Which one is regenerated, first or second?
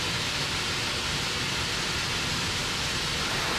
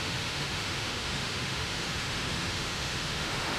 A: second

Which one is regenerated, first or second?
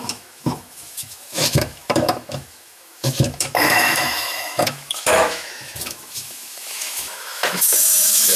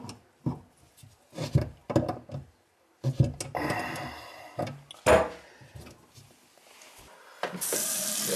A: first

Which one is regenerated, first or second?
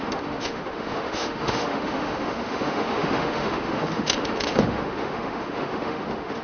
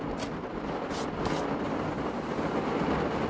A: first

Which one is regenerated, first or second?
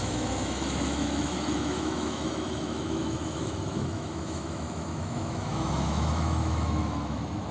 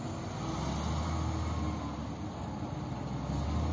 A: first